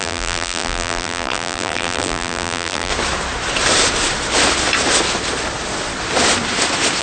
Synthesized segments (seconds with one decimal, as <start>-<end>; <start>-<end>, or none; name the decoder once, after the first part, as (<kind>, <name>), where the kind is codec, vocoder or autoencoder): 0.0-2.9 (vocoder, BigVGAN v2)